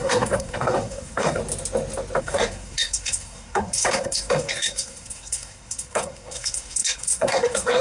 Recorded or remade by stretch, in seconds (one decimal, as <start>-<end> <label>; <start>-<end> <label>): 0.0-1.4 remade; 1.4-2.2 recorded; 2.2-7.8 remade